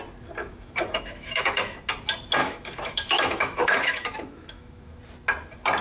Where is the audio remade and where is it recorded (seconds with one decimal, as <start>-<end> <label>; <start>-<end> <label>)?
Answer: 0.0-0.4 recorded; 0.4-1.8 remade; 1.8-2.4 recorded; 2.4-5.0 remade; 5.0-5.8 recorded